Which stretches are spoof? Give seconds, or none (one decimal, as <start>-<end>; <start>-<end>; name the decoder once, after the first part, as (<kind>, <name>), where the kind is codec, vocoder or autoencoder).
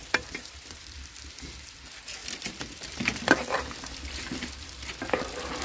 0.0-1.1 (vocoder, BigVGAN v2); 2.2-5.0